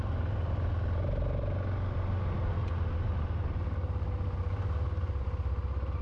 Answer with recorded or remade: recorded